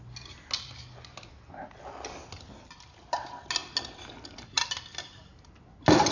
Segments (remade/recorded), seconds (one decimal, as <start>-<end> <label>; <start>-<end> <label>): 0.0-6.1 recorded